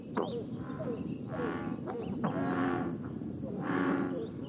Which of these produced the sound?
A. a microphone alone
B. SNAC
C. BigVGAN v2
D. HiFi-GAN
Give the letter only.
C